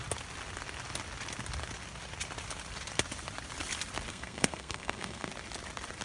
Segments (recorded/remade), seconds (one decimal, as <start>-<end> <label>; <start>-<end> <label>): 0.0-4.1 recorded; 4.1-5.3 remade; 5.3-6.0 recorded

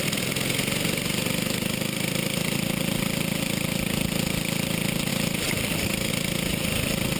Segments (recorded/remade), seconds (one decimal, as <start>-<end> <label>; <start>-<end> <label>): 0.0-5.1 recorded; 5.1-6.1 remade; 6.1-7.2 recorded

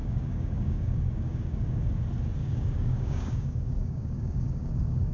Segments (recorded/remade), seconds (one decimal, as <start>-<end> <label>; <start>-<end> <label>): 0.0-1.9 remade; 1.9-2.4 recorded; 2.4-5.1 remade

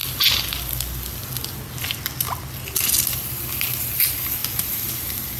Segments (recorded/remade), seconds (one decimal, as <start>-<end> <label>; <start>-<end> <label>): 0.0-5.4 recorded

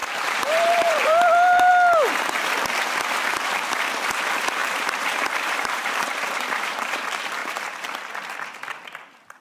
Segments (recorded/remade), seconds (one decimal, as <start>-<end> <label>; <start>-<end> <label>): 0.0-1.7 remade; 1.7-4.6 recorded; 4.6-6.9 remade; 6.9-7.4 recorded; 7.4-8.2 remade; 8.2-9.4 recorded